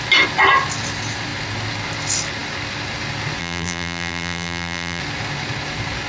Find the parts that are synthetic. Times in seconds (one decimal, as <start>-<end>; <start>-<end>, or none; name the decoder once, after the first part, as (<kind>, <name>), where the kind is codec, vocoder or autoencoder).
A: 3.4-5.0 (vocoder, BigVGAN v2)

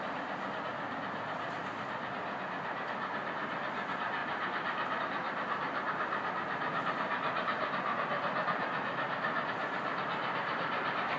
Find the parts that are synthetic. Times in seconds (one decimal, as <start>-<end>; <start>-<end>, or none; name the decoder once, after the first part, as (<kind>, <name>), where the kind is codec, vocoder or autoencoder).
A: none